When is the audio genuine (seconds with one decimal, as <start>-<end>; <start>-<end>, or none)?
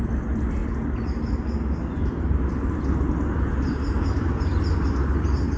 0.0-5.6